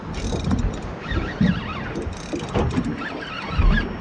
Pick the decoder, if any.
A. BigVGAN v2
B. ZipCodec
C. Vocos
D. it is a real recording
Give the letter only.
D